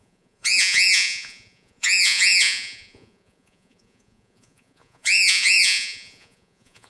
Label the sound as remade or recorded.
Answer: remade